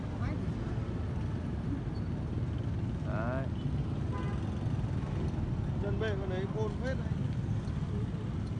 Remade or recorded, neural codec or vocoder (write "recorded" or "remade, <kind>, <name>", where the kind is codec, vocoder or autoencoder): recorded